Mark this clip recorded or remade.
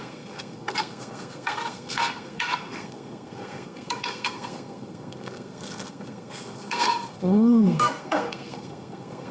remade